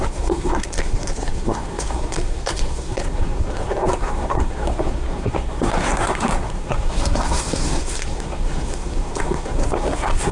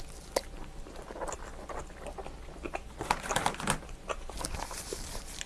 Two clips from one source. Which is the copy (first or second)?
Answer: first